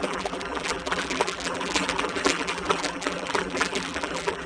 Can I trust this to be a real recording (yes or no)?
no